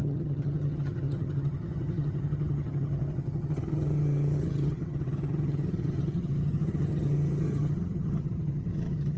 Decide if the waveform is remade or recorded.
remade